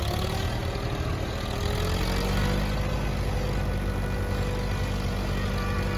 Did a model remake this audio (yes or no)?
no